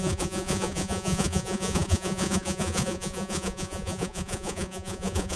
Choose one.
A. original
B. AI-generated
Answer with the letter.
B